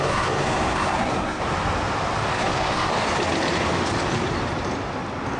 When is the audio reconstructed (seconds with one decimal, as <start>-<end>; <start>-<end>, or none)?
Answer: 0.0-1.4; 2.4-2.9